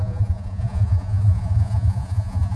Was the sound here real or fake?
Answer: fake